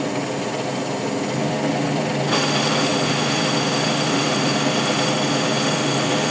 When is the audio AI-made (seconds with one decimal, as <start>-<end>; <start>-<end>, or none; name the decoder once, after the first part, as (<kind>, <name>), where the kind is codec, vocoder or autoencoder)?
none